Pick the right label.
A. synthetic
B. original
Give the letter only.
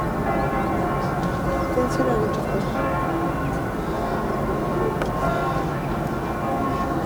B